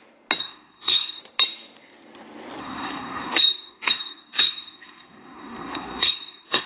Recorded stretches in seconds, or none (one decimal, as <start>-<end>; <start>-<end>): 0.0-0.4; 1.2-2.6